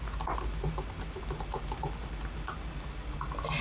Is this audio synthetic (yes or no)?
no